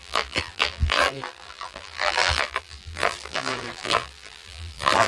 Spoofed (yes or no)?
yes